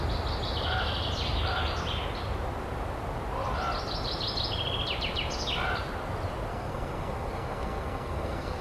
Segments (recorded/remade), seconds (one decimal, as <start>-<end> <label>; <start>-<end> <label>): 0.0-6.5 recorded; 6.5-8.6 remade